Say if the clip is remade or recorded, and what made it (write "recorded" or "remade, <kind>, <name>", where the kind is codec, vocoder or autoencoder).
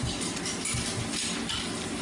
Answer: recorded